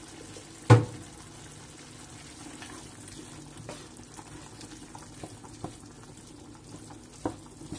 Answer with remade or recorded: recorded